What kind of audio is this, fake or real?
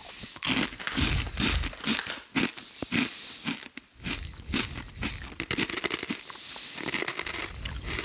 real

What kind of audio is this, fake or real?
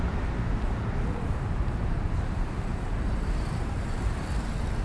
fake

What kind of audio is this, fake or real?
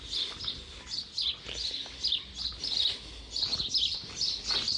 real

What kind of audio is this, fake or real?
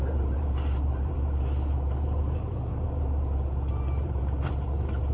fake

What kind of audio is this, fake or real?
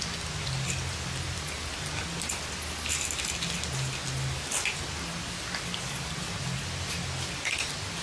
real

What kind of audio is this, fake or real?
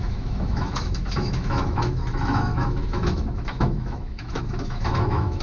fake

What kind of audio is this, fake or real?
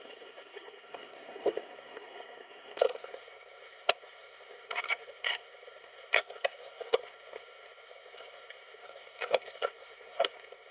fake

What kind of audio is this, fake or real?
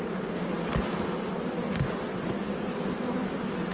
real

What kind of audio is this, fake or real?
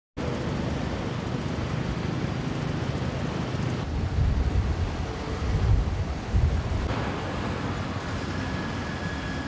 real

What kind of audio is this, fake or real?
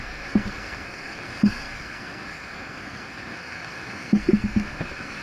fake